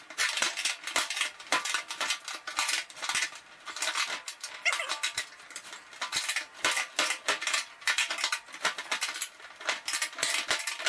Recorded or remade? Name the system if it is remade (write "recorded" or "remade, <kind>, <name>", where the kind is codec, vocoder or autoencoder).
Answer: recorded